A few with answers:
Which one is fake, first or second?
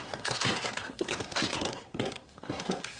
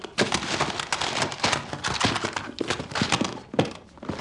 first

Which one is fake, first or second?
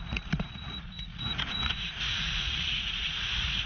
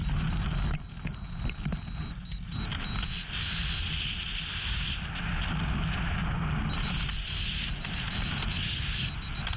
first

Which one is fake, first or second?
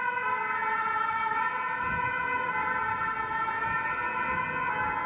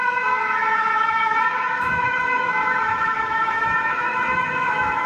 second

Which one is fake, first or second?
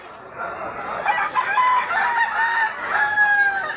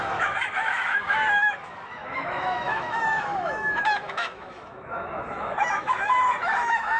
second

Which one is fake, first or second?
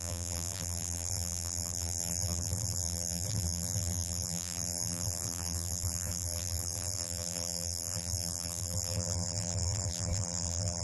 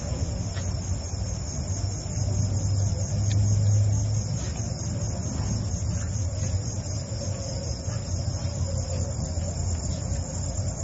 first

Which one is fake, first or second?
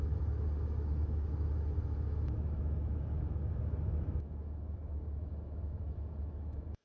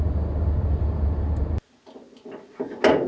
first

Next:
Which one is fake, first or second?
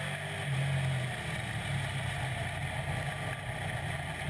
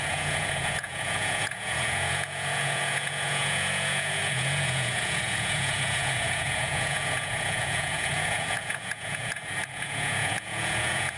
second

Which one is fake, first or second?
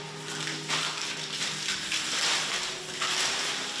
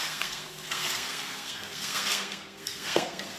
second